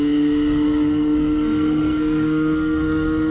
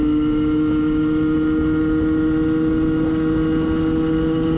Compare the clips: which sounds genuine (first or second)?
second